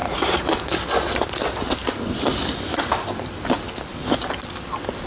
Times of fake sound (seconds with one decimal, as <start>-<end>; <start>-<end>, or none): 0.0-1.4; 1.8-4.4